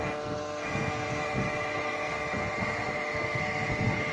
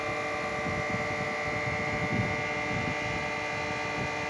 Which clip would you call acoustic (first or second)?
second